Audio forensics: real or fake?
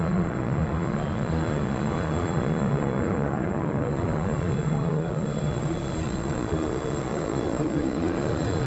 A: fake